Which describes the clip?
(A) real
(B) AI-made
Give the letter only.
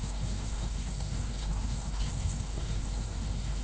B